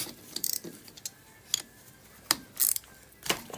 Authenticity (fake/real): real